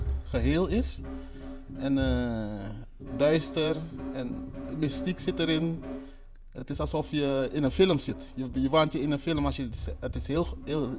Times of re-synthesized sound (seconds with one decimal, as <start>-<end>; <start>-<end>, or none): 2.6-6.1; 6.6-8.1; 9.8-11.0